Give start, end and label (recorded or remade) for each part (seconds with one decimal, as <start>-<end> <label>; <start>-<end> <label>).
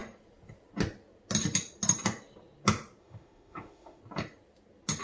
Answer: 0.0-3.0 recorded; 3.0-4.0 remade; 4.0-5.0 recorded